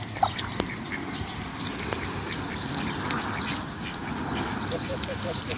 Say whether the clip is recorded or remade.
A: remade